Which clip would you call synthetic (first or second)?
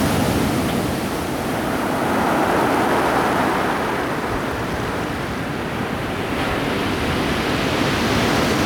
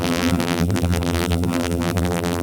second